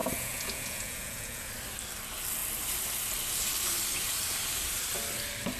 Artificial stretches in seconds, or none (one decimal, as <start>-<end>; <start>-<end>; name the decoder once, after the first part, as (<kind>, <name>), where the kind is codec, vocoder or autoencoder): 0.0-1.5 (vocoder, Vocos)